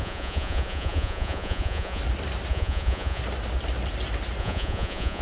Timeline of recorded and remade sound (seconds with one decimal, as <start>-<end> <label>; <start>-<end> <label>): 0.0-2.0 remade; 2.0-2.5 recorded; 2.5-3.2 remade; 3.2-4.4 recorded; 4.4-5.2 remade